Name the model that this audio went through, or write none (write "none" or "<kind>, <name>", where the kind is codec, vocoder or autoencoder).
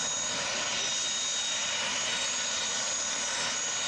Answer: none